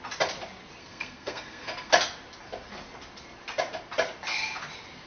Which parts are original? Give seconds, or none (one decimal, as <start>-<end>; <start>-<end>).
0.0-0.8; 1.9-5.1